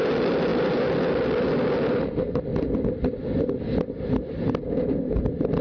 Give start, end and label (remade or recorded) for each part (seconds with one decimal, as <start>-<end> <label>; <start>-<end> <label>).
0.0-2.5 recorded; 2.5-4.4 remade; 4.4-5.6 recorded